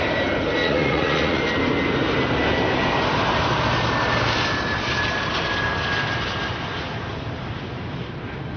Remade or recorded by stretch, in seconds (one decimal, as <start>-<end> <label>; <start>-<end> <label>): 0.0-0.6 recorded; 0.6-1.4 remade; 1.4-8.6 recorded